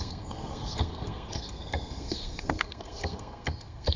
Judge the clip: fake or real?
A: fake